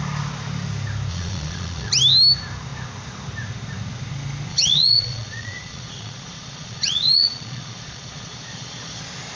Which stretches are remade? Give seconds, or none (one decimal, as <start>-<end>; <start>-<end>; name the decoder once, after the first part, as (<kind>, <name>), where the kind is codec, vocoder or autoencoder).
1.1-1.9 (vocoder, Vocos); 4.5-9.0